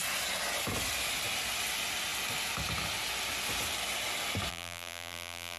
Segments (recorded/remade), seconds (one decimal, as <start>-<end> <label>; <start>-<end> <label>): 0.0-4.5 recorded; 4.5-5.6 remade